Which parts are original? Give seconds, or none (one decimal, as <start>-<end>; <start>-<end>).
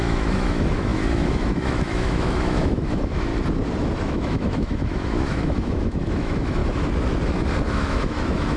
3.3-4.0; 6.6-7.7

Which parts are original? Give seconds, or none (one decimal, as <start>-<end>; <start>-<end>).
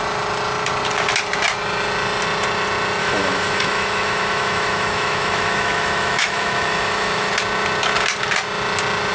0.0-3.0; 7.3-9.1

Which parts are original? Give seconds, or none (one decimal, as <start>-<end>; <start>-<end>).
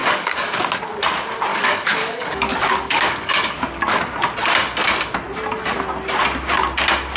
0.6-1.5; 4.0-7.2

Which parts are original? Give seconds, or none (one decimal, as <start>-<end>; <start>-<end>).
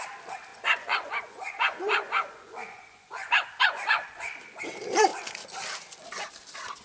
0.0-0.5; 4.6-6.8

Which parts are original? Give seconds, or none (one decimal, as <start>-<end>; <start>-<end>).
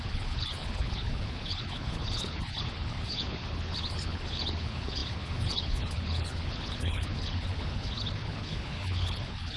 none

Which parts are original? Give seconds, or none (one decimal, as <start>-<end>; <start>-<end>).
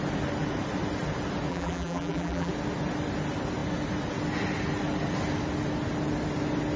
0.0-1.5; 2.5-6.8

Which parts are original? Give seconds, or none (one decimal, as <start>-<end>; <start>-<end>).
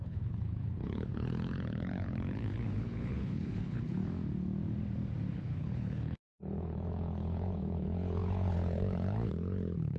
4.0-5.3